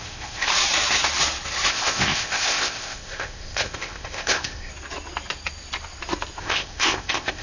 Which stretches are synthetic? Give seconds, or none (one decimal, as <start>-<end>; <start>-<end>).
0.0-0.5; 1.7-4.7; 6.4-7.4